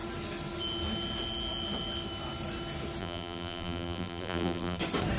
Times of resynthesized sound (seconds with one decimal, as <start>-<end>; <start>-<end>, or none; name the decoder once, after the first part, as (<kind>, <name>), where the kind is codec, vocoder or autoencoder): 3.0-4.8 (vocoder, BigVGAN v2)